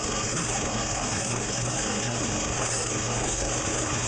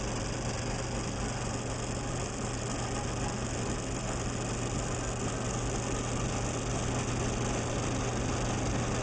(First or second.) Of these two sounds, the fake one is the first